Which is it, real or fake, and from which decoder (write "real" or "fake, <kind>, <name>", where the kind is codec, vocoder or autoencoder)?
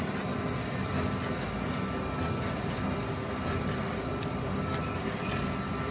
real